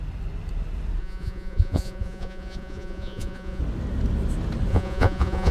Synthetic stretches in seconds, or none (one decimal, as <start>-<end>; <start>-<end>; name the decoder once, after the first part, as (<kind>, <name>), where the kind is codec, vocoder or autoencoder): 1.0-3.6 (vocoder, Vocos); 4.7-5.5

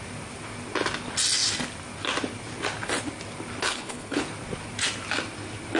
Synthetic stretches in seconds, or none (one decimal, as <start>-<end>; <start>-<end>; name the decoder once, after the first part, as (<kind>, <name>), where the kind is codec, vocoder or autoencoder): 3.6-4.2 (codec, HILCodec)

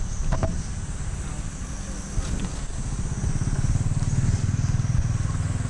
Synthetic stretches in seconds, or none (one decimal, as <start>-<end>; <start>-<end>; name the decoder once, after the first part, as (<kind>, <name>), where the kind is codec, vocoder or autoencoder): none

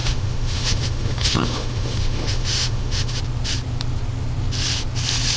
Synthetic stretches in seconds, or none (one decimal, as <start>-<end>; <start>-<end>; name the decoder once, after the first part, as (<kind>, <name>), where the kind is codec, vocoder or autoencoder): 0.0-3.2 (autoencoder, DAC-VAE)